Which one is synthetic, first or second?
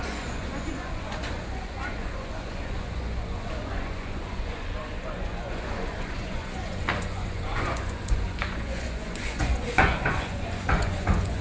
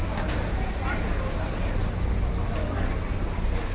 first